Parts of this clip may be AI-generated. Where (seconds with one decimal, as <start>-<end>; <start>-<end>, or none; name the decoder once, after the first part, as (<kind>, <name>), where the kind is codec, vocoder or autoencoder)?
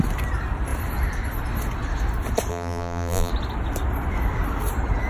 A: 2.5-3.3 (vocoder, BigVGAN v2)